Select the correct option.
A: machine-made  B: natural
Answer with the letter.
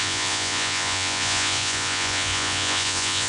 A